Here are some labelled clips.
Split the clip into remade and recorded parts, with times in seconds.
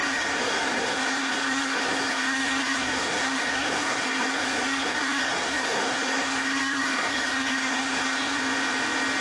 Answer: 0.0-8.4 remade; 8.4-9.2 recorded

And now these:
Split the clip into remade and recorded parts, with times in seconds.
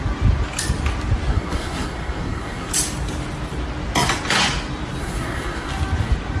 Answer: 0.0-1.3 recorded; 1.3-2.7 remade; 2.7-5.0 recorded; 5.0-5.7 remade; 5.7-6.4 recorded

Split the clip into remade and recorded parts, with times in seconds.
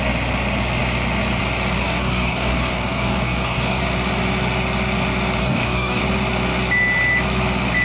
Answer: 0.0-1.8 recorded; 1.8-3.8 remade; 3.8-5.4 recorded; 5.4-6.0 remade; 6.0-7.8 recorded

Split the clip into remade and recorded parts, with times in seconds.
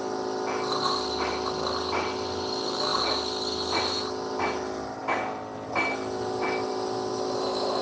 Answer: 0.0-7.8 recorded